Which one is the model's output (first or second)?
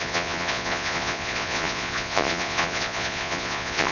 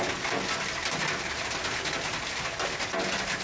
first